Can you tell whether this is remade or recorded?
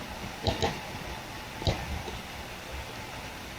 recorded